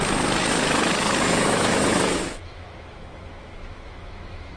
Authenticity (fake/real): fake